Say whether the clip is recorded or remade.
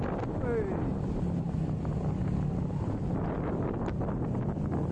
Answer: recorded